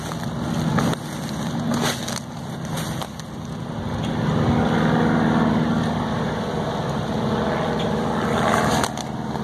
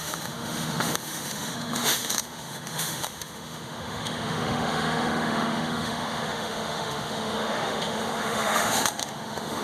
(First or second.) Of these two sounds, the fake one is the second